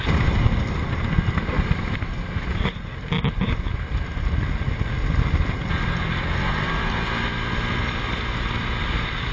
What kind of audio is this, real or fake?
real